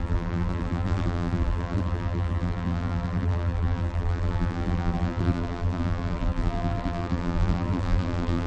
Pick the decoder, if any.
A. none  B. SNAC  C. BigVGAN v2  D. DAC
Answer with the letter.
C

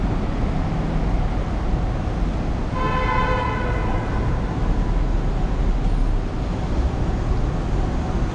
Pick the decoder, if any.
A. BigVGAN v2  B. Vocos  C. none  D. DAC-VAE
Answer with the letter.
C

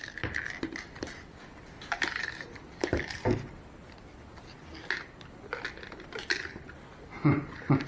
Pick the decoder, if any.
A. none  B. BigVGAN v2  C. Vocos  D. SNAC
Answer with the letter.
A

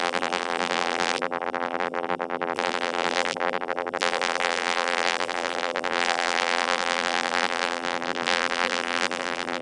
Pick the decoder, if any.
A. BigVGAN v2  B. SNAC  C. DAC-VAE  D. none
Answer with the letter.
A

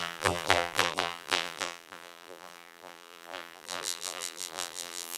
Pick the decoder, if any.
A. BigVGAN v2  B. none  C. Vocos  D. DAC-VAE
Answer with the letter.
A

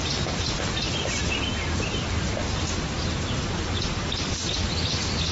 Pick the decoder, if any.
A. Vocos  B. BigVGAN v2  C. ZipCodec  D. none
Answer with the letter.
D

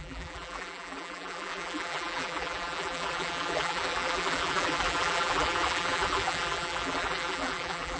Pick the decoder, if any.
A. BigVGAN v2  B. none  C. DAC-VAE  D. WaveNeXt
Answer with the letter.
A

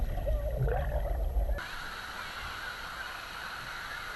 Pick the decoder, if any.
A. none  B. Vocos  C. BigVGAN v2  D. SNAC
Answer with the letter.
A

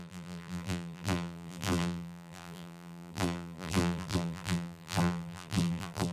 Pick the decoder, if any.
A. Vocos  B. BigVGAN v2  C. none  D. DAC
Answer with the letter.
B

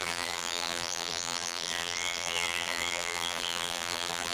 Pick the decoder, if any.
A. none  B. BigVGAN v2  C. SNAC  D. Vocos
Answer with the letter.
B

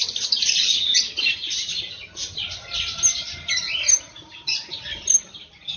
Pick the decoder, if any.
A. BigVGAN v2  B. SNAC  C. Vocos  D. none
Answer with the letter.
D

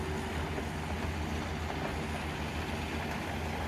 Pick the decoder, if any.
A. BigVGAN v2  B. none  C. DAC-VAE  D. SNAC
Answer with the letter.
B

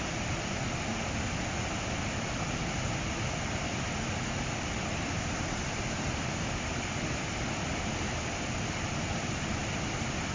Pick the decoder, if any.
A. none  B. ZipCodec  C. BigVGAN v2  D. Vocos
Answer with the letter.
A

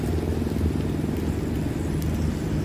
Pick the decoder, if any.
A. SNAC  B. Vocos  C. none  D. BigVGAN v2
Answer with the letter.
C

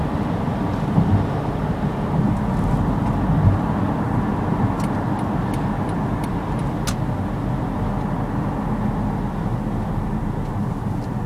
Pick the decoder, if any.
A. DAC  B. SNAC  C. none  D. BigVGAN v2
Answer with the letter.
C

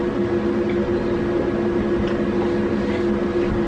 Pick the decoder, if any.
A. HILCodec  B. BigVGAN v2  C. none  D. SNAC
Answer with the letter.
B